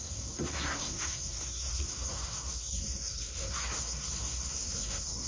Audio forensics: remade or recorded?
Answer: remade